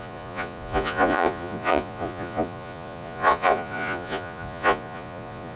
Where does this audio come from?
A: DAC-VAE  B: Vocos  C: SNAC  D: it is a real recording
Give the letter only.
B